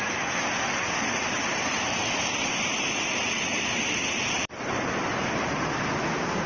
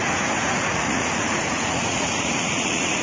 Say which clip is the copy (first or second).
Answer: second